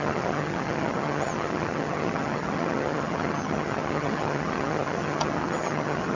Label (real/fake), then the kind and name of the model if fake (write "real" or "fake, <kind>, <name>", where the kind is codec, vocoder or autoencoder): fake, vocoder, HiFi-GAN